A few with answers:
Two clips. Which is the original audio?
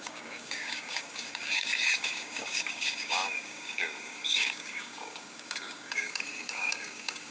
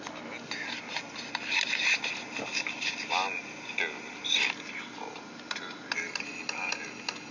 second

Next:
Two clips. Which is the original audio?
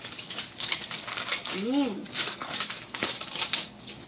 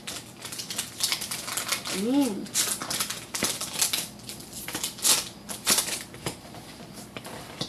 second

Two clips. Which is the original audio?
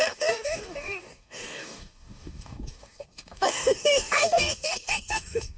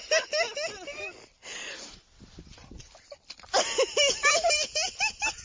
second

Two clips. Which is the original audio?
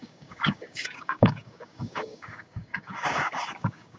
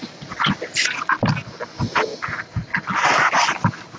second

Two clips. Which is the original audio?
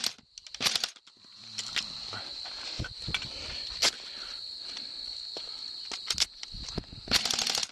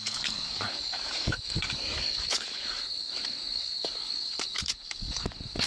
first